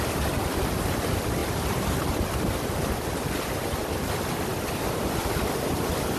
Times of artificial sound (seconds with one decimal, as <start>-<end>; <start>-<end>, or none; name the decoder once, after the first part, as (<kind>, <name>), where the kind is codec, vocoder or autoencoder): none